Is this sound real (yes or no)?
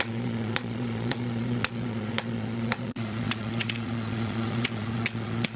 no